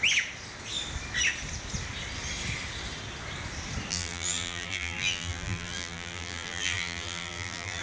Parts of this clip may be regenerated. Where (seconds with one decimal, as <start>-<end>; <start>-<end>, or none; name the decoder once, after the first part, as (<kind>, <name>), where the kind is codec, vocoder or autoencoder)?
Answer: 3.9-7.8 (vocoder, BigVGAN v2)